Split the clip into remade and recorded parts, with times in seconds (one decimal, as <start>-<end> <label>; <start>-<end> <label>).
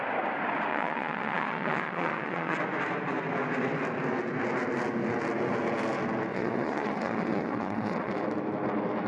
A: 0.0-0.7 recorded; 0.7-2.6 remade; 2.6-6.3 recorded; 6.3-8.1 remade; 8.1-9.1 recorded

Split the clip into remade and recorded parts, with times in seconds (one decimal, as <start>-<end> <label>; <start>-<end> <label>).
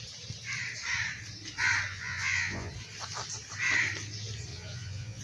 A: 0.0-1.9 recorded; 1.9-2.7 remade; 2.7-4.5 recorded; 4.5-5.2 remade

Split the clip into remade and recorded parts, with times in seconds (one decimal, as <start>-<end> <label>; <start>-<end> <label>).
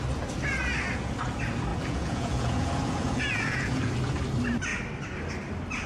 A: 0.0-1.7 recorded; 1.7-3.9 remade; 3.9-5.9 recorded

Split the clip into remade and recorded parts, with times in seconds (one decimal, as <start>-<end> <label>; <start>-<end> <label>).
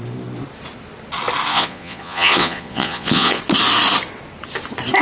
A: 0.0-1.5 recorded; 1.5-3.4 remade; 3.4-5.0 recorded